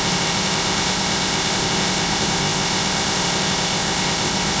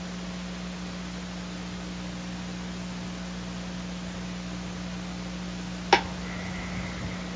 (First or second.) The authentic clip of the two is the second